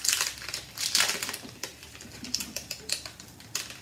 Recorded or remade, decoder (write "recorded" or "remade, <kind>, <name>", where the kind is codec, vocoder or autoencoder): recorded